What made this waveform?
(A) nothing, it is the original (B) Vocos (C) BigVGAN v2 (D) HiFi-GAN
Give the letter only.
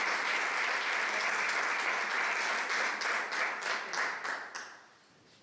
A